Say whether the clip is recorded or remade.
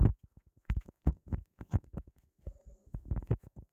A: remade